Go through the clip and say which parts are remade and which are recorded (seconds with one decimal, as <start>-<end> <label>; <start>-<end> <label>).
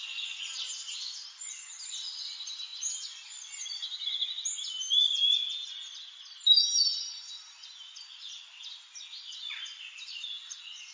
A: 0.0-10.9 recorded